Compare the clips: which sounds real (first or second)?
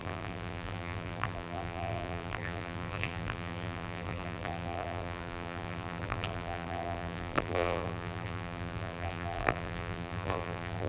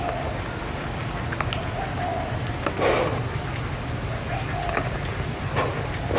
second